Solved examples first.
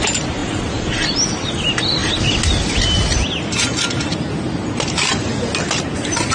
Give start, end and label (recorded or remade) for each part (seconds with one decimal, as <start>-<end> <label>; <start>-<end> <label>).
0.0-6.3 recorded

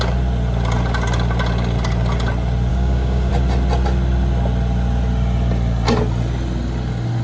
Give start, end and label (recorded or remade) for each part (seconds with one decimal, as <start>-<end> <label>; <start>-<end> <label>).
0.0-2.7 recorded; 2.7-3.3 remade; 3.3-7.2 recorded

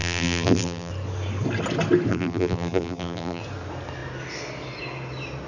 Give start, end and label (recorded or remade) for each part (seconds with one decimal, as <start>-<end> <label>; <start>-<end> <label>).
0.0-0.9 remade; 0.9-2.1 recorded; 2.1-3.4 remade; 3.4-5.5 recorded

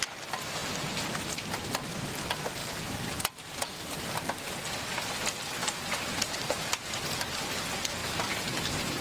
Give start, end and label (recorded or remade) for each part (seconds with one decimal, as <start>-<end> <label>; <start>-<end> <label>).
0.0-9.0 recorded

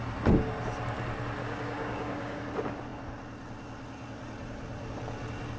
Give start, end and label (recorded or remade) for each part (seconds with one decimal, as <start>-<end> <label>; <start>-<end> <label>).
0.0-1.4 recorded; 1.4-2.4 remade; 2.4-5.6 recorded